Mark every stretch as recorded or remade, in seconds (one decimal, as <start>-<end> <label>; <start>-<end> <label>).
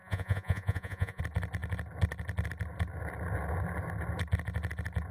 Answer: 0.0-1.2 remade; 1.2-5.1 recorded